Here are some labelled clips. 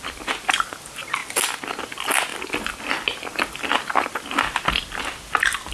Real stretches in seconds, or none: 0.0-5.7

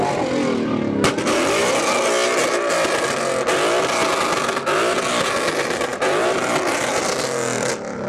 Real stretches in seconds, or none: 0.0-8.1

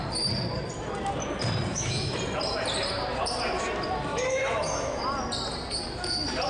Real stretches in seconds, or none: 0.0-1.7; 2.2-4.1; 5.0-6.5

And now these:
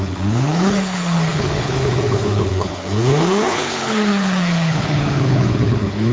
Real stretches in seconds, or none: none